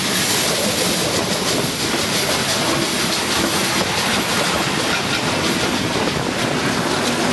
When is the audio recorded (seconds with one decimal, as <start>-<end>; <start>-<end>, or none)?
0.0-7.3